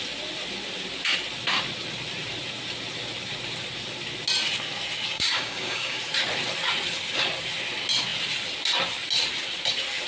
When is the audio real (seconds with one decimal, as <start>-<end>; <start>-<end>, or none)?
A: 0.0-5.1; 6.0-10.1